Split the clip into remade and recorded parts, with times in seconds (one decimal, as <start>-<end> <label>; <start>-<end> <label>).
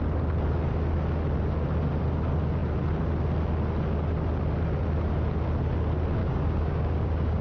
0.0-6.2 recorded; 6.2-7.4 remade